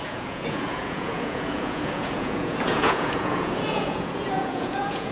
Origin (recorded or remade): remade